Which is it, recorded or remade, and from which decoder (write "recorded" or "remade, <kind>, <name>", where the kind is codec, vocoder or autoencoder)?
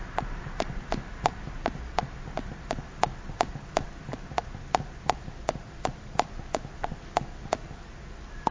recorded